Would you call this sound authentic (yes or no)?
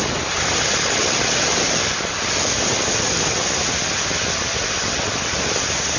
yes